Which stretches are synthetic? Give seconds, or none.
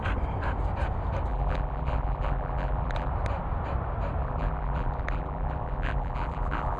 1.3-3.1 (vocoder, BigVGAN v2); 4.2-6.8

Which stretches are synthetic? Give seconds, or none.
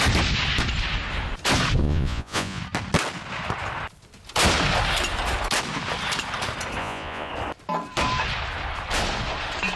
1.8-2.6 (vocoder, Vocos); 6.8-7.3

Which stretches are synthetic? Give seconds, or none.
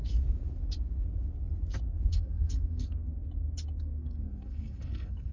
2.1-3.1 (codec, SNAC); 3.8-5.3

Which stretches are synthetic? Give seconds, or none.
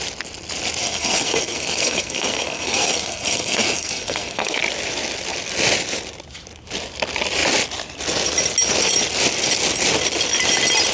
0.8-4.6 (codec, SNAC)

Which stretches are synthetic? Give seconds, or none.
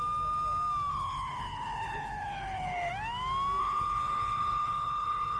0.9-2.9 (codec, HILCodec); 3.6-5.4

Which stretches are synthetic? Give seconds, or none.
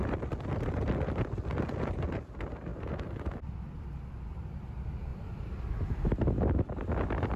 none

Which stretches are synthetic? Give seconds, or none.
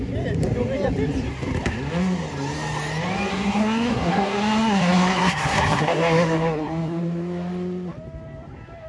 3.3-7.0 (codec, SNAC)